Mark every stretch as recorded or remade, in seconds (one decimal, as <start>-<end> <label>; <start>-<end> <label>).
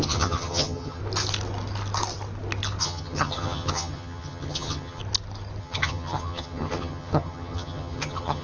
0.0-1.0 remade; 1.0-2.8 recorded; 2.8-5.0 remade; 5.0-5.6 recorded; 5.6-8.4 remade